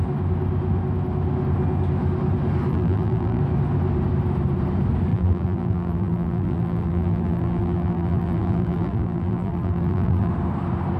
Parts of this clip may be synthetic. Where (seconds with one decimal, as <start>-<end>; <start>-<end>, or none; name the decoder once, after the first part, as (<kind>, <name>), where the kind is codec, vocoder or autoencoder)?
2.7-3.4 (vocoder, BigVGAN v2); 5.1-10.3